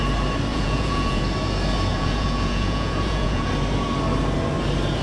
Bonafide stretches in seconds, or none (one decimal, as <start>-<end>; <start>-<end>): 0.0-0.5; 1.2-1.9; 3.5-5.0